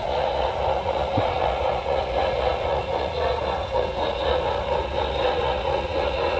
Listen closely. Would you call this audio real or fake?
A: fake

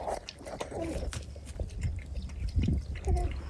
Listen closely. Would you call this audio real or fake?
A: real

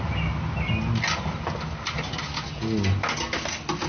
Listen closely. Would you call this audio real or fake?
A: real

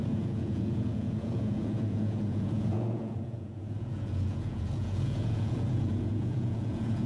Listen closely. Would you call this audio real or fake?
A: fake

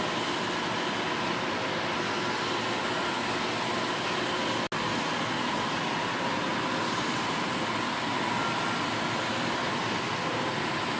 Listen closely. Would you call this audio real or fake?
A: real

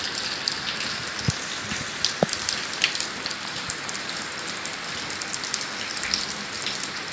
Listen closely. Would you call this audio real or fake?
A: real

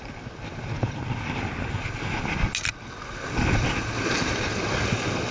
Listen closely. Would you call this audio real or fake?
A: real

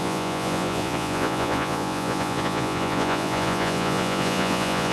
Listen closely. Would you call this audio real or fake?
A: fake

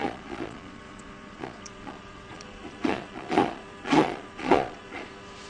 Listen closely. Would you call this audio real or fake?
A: fake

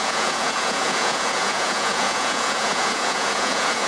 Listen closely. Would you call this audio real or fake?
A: fake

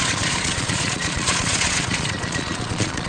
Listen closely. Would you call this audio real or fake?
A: fake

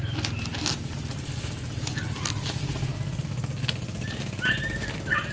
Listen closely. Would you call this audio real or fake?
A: real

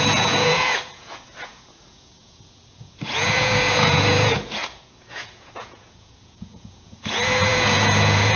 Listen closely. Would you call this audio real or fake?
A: fake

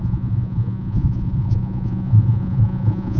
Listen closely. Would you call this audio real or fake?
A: fake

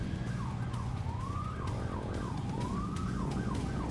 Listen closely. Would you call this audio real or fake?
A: fake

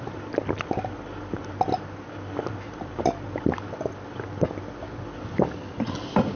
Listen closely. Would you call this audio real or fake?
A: real